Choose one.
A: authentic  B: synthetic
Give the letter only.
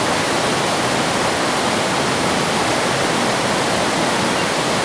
A